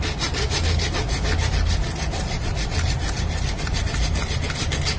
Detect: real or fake real